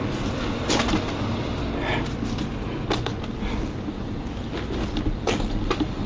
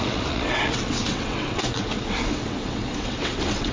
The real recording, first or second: first